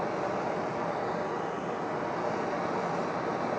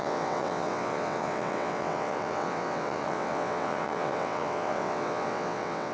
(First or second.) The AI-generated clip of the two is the second